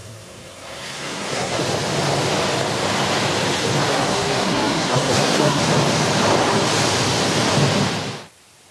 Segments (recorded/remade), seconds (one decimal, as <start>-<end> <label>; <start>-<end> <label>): 0.0-1.6 remade; 1.6-3.9 recorded; 3.9-5.6 remade; 5.6-8.7 recorded